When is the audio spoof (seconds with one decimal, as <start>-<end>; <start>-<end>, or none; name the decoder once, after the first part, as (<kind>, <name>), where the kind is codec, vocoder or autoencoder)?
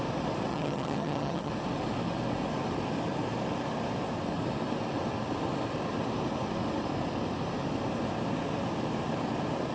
0.5-1.5 (vocoder, HiFi-GAN)